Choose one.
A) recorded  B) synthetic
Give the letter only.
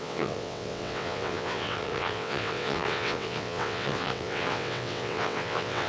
B